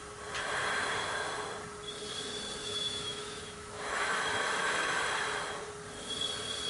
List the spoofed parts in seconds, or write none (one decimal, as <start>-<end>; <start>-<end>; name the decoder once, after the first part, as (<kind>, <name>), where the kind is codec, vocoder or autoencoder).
2.6-5.0 (autoencoder, DAC-VAE)